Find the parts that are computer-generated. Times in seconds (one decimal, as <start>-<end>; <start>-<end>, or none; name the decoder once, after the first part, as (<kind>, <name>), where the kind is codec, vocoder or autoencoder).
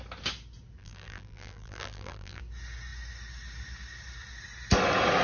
0.8-2.4 (vocoder, BigVGAN v2)